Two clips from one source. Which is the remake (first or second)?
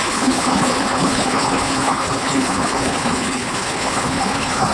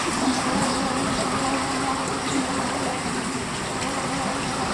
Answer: first